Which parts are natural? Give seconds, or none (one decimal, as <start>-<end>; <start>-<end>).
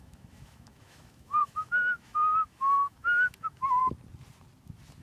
3.8-5.0